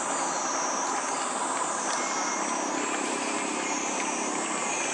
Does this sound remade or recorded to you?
recorded